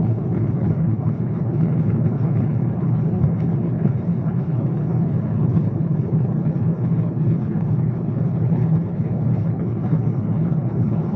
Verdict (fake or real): fake